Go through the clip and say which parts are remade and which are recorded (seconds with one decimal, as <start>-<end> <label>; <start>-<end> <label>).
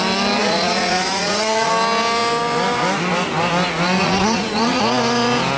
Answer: 0.0-0.4 recorded; 0.4-1.7 remade; 1.7-4.0 recorded; 4.0-4.8 remade; 4.8-5.6 recorded